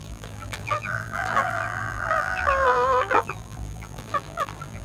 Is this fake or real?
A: fake